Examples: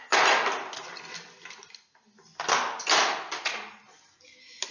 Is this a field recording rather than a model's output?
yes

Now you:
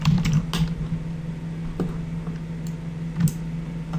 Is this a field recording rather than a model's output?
yes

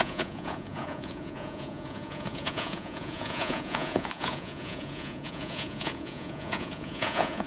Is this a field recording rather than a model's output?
no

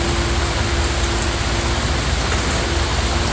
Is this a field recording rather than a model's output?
yes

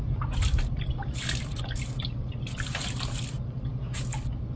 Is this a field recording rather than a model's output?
yes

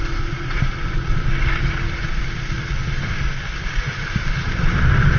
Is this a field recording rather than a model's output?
yes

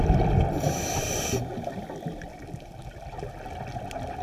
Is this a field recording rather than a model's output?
yes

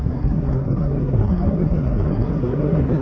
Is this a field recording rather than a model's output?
no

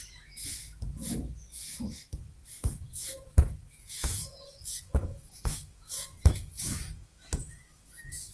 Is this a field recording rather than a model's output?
no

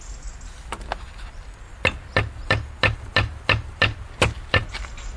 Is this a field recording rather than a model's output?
yes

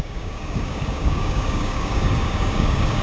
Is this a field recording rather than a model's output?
no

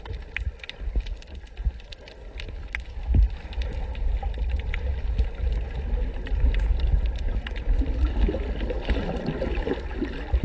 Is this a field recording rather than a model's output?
yes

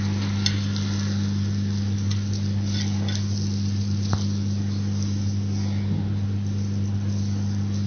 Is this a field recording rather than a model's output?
yes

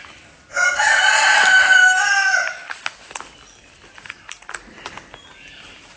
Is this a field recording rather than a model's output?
yes